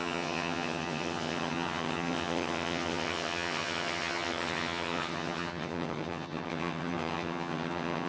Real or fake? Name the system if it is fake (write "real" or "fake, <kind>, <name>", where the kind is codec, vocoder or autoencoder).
fake, vocoder, HiFi-GAN